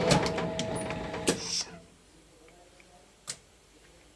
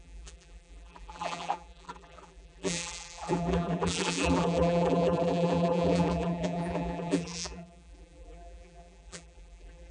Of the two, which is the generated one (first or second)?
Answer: second